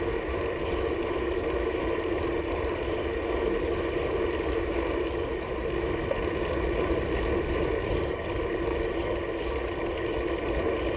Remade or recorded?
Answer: recorded